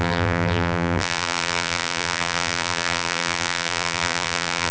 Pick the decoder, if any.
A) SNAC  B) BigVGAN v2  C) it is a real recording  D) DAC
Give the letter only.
B